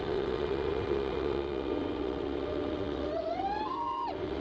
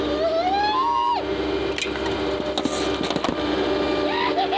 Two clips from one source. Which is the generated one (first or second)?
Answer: first